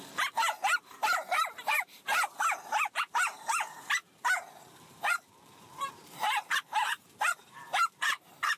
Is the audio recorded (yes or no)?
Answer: no